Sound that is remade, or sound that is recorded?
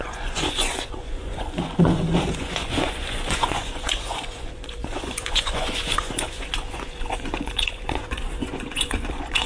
remade